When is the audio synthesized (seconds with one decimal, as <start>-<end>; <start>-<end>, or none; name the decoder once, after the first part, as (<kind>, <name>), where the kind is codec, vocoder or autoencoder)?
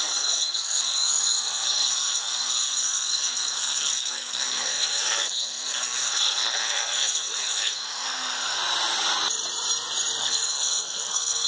0.0-8.6 (codec, SNAC); 10.2-11.5